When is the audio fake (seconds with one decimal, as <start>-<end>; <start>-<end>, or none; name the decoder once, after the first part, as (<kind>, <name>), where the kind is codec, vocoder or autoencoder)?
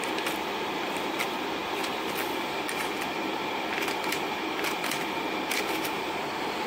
none